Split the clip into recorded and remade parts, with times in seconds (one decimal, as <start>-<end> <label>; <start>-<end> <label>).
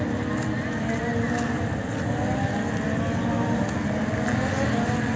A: 0.0-5.2 recorded